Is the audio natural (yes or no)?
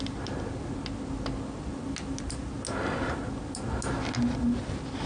yes